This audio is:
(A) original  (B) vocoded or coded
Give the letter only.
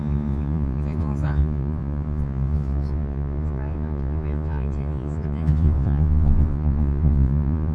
B